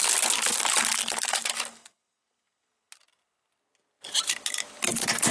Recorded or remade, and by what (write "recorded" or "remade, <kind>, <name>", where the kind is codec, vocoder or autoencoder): recorded